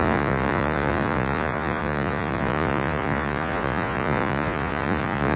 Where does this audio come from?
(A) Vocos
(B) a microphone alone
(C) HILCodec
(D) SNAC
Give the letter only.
A